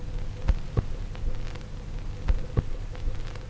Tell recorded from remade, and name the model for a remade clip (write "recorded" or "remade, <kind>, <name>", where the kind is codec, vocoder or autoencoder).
recorded